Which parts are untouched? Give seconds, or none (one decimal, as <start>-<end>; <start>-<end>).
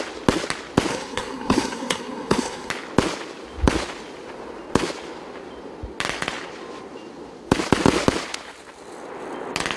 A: 0.0-0.9; 2.7-9.8